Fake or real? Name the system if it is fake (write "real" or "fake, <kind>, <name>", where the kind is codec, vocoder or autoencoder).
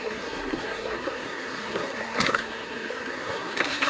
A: fake, codec, SNAC